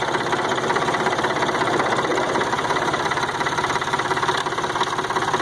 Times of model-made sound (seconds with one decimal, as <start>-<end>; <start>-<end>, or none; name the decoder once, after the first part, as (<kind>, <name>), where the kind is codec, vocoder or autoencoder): 0.5-1.2 (vocoder, BigVGAN v2); 2.1-4.8